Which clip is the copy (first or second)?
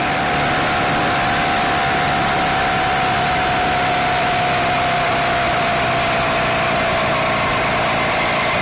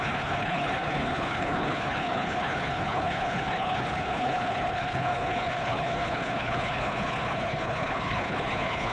second